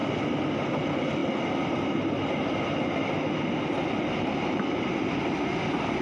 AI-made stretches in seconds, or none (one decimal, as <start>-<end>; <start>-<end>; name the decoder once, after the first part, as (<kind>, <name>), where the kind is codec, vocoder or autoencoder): none